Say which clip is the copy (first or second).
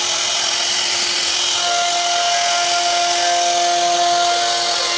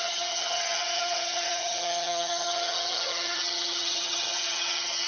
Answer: second